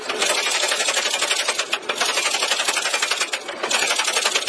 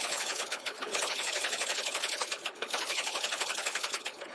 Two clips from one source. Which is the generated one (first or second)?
second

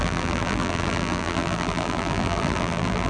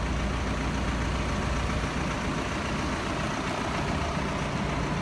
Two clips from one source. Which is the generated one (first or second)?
first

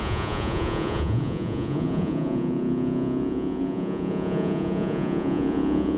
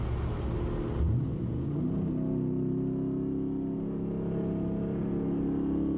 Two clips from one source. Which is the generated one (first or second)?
first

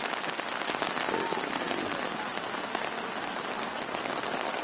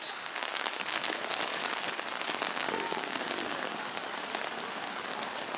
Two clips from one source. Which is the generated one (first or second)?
second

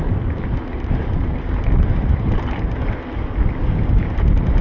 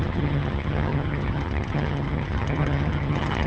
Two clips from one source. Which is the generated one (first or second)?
second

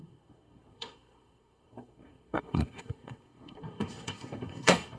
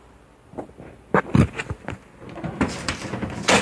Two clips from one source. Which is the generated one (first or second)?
first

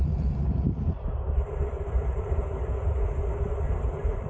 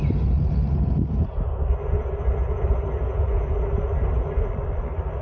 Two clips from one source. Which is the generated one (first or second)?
first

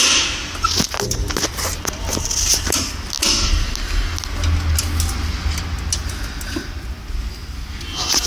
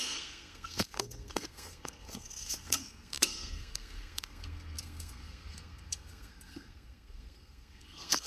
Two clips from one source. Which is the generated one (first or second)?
second